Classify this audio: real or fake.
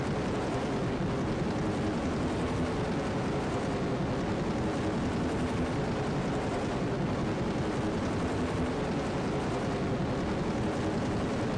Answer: real